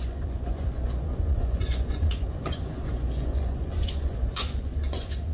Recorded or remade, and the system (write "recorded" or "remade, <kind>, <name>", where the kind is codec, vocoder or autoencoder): remade, vocoder, Vocos